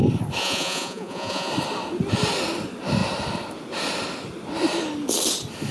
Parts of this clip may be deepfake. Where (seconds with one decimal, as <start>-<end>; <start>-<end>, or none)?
0.4-1.5